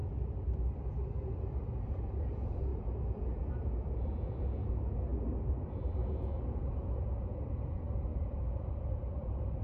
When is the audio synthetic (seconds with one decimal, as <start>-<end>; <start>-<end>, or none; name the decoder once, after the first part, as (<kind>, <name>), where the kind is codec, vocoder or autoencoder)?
1.8-5.1 (vocoder, Vocos); 6.0-9.6